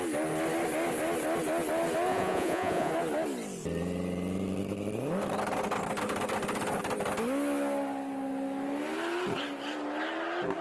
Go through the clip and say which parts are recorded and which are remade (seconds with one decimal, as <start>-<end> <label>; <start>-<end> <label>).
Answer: 0.0-2.1 recorded; 2.1-2.9 remade; 2.9-10.6 recorded